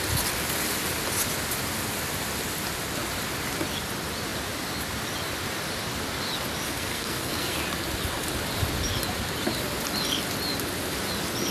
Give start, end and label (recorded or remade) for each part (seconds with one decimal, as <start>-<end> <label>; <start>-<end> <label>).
0.0-6.7 recorded; 6.7-7.6 remade; 7.6-11.5 recorded